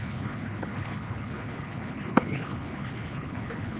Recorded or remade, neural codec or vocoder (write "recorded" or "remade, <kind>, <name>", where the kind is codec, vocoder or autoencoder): remade, codec, HILCodec